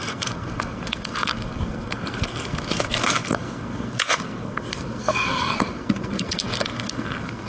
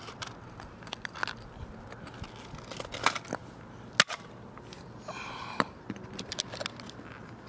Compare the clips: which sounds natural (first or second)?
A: second